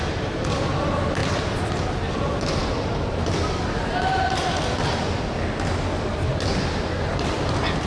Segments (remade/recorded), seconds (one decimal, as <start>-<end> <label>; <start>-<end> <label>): 0.0-7.9 recorded